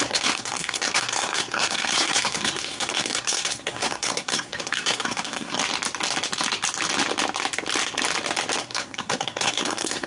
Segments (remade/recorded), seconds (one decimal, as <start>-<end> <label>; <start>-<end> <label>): 0.0-5.6 remade; 5.6-8.6 recorded; 8.6-10.1 remade